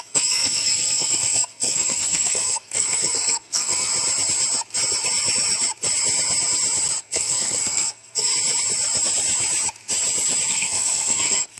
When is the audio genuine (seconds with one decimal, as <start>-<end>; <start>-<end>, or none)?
3.9-7.0; 8.3-10.5